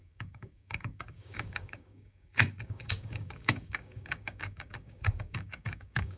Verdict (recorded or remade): remade